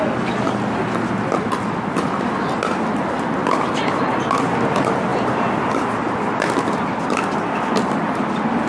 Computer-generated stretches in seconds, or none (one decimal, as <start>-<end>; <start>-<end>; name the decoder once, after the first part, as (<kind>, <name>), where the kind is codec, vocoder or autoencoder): none